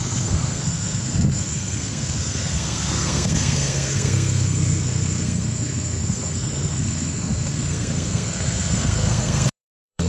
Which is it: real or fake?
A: fake